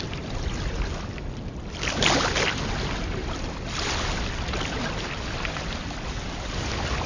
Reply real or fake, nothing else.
real